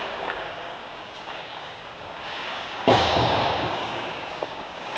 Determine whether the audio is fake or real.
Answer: fake